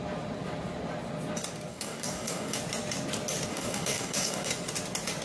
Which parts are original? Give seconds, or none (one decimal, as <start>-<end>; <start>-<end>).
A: 0.0-1.7; 2.6-3.5; 4.5-5.2